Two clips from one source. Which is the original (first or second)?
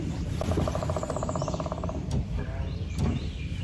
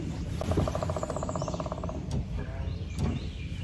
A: second